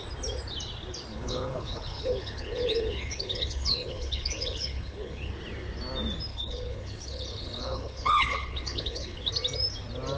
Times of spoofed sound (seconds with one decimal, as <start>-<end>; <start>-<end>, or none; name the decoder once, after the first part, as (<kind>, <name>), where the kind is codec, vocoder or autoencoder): 1.1-5.3 (codec, HILCodec); 6.3-9.3